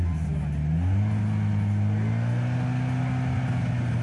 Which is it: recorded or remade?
recorded